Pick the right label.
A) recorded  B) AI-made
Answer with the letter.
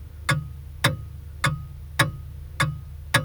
A